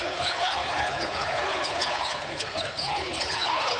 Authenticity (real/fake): fake